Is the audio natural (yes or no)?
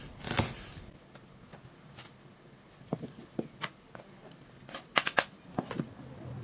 yes